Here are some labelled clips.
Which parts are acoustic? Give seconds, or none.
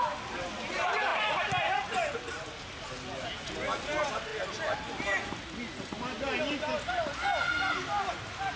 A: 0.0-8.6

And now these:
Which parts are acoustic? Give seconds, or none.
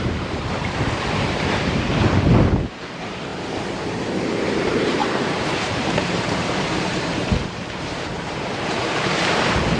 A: 1.9-2.8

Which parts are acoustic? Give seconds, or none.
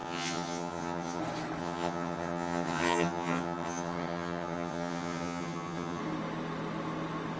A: 1.2-1.6; 6.0-7.4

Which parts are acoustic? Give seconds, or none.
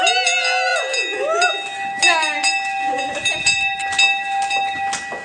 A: 0.0-5.2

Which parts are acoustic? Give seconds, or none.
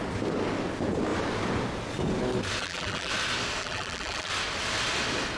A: 0.0-2.6; 3.1-3.6; 4.3-5.4